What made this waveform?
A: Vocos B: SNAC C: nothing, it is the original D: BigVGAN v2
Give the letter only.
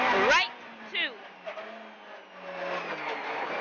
C